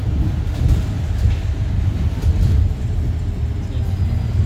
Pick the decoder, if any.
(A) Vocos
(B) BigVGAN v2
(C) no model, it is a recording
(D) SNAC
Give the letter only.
C